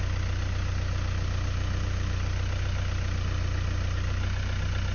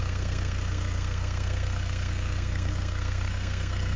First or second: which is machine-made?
second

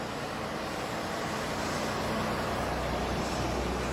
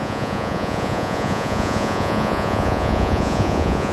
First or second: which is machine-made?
second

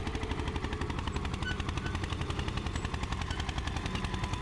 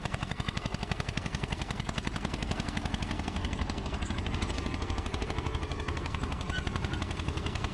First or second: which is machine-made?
second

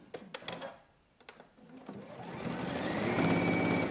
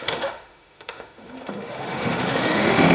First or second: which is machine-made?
second